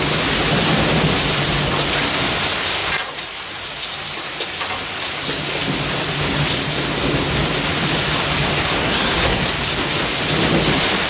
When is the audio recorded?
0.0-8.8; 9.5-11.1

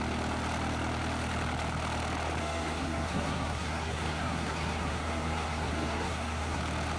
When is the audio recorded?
0.0-2.4; 6.6-7.0

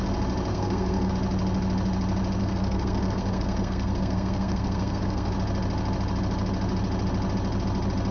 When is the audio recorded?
0.0-0.5; 1.1-2.4; 5.3-8.1

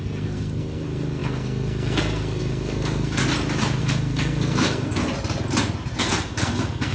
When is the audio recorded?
3.2-3.8; 5.0-6.0

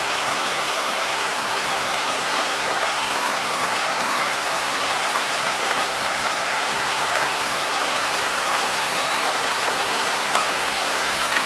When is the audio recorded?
none